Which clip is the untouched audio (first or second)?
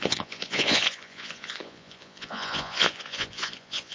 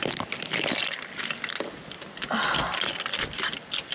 second